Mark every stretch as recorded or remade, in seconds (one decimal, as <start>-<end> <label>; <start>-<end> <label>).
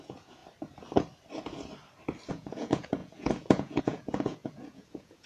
0.0-0.4 remade; 0.4-2.3 recorded; 2.3-5.3 remade